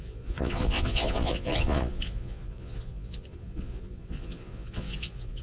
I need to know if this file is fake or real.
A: fake